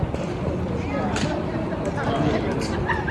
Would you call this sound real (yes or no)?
yes